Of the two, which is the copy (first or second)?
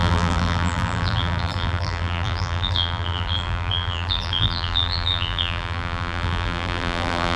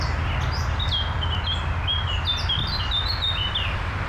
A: first